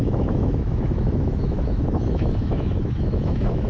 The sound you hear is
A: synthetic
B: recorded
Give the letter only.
A